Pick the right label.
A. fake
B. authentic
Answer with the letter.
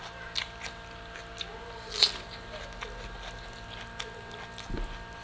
B